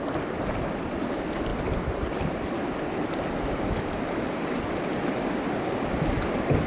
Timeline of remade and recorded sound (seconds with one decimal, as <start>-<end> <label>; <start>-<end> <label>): 0.0-6.7 recorded